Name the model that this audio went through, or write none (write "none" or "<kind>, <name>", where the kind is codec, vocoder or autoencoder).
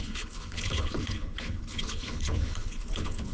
codec, HILCodec